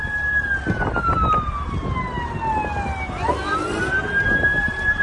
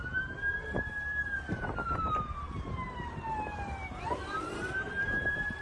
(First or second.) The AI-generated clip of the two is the second